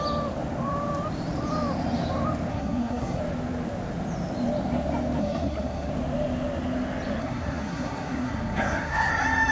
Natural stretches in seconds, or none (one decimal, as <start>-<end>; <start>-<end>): 0.0-2.5; 3.2-5.2; 5.9-7.2; 9.1-9.5